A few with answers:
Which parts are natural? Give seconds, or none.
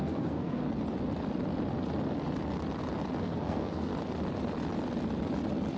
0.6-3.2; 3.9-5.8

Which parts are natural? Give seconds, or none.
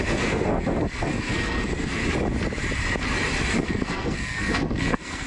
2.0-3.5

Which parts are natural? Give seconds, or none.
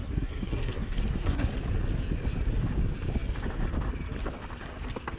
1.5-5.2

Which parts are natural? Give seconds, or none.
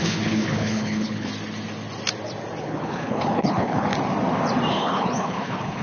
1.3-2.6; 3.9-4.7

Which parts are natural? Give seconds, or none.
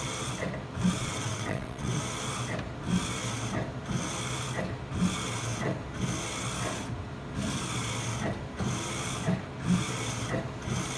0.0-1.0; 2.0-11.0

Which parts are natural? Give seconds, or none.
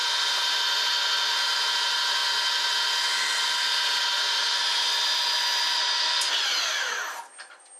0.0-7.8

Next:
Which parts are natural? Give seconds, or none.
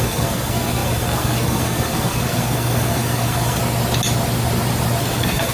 3.6-5.0